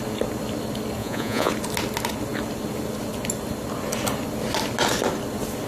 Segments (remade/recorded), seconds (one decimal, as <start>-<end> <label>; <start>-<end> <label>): 0.0-1.0 recorded; 1.0-1.5 remade; 1.5-5.7 recorded